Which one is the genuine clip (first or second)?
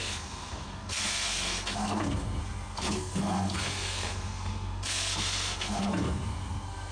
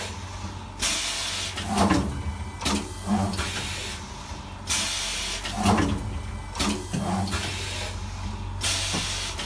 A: second